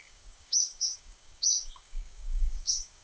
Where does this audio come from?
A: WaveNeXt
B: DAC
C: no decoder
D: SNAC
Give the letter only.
B